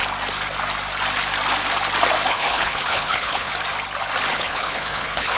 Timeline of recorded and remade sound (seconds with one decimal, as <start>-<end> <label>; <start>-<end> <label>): 0.0-2.3 recorded; 2.3-3.5 remade; 3.5-4.3 recorded; 4.3-5.4 remade